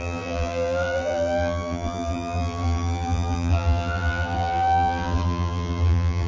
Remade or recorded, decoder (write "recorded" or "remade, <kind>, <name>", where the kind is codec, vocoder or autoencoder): remade, vocoder, BigVGAN v2